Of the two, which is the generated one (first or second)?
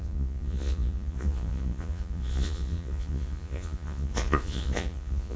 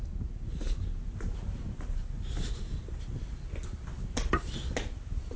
first